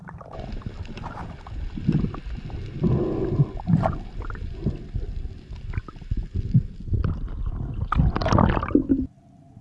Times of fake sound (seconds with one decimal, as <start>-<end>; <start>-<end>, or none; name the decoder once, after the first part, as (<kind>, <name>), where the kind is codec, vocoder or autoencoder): none